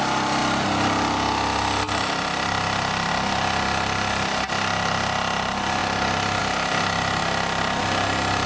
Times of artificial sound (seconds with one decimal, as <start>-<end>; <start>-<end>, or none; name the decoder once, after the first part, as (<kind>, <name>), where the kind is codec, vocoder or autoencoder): 5.8-6.4 (vocoder, BigVGAN v2)